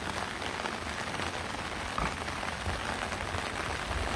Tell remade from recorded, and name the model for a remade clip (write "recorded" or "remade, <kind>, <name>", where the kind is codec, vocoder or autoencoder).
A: recorded